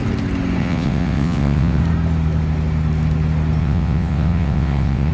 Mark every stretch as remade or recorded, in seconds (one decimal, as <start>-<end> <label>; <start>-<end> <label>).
0.0-0.6 recorded; 0.6-1.8 remade; 1.8-3.6 recorded; 3.6-5.1 remade